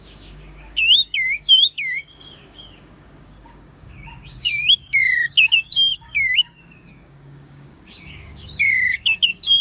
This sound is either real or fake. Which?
fake